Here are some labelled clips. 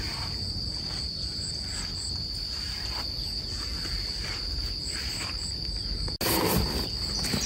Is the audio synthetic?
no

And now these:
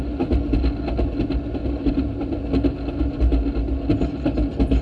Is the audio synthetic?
no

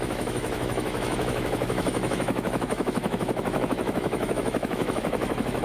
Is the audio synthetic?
yes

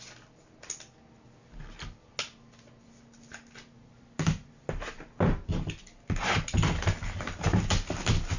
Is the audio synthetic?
no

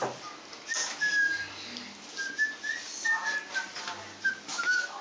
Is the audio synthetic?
no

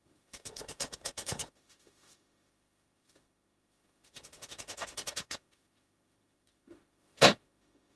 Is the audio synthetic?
yes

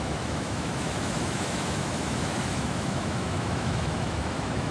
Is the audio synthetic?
yes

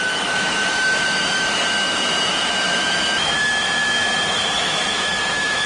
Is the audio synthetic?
yes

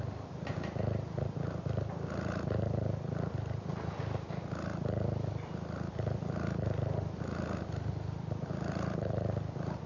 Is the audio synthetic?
no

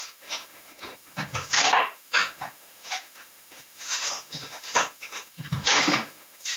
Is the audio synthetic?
yes